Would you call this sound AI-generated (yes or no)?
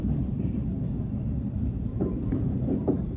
yes